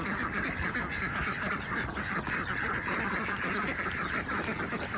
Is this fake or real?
real